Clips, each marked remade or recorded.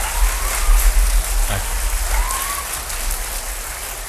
recorded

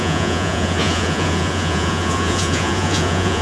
remade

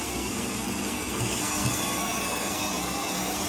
remade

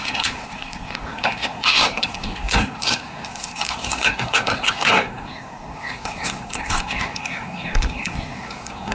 remade